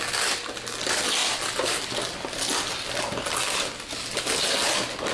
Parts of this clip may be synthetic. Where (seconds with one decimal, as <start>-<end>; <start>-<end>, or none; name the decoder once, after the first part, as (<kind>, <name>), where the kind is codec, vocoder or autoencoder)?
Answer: none